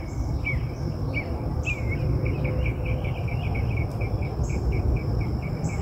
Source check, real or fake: fake